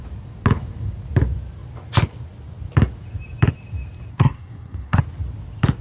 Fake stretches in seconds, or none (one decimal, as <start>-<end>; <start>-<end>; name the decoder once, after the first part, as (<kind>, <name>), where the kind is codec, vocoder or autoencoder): 4.1-5.0 (codec, SNAC)